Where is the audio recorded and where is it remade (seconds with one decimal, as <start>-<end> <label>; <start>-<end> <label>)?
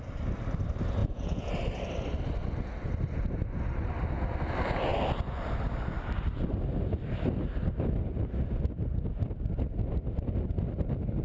0.0-1.0 recorded; 1.0-1.5 remade; 1.5-11.2 recorded